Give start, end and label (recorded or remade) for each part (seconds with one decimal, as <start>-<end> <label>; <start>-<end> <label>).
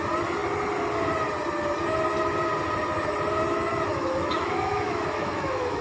0.0-3.9 recorded; 3.9-5.8 remade